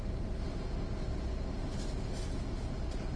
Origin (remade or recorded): recorded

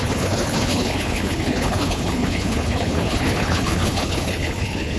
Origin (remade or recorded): remade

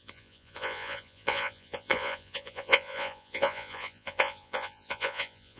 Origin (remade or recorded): remade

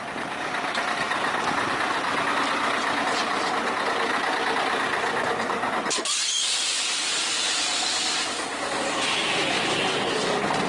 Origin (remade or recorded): recorded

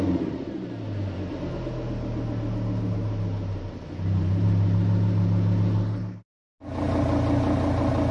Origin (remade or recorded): recorded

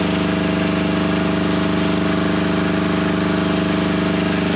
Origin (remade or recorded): recorded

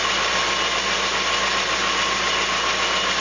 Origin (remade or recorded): recorded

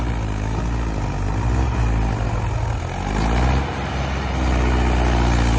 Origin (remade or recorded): recorded